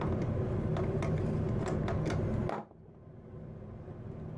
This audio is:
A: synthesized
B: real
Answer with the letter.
B